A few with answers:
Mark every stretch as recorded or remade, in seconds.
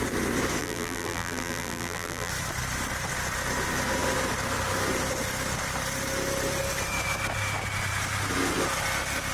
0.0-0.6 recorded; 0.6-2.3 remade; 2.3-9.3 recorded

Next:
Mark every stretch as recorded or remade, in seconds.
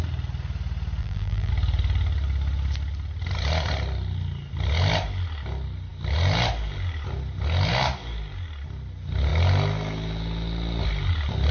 0.0-1.0 recorded; 1.0-1.5 remade; 1.5-11.5 recorded